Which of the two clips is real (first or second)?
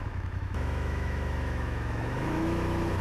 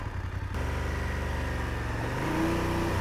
second